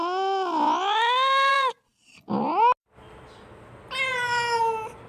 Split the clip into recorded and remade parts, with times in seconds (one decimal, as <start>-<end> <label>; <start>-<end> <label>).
0.0-4.1 recorded; 4.1-4.6 remade; 4.6-5.1 recorded